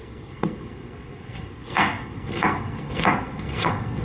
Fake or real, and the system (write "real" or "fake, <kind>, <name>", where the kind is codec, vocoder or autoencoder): fake, codec, SNAC